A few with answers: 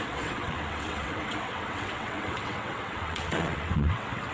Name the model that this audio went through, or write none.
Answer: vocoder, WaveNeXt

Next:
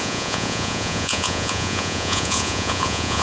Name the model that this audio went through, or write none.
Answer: vocoder, Vocos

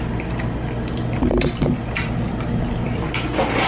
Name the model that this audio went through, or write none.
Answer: none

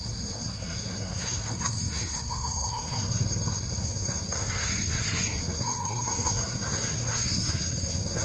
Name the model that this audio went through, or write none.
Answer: codec, SNAC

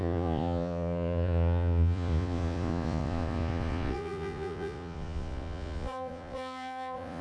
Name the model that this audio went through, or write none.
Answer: vocoder, Vocos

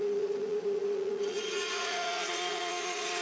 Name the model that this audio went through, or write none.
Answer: vocoder, Vocos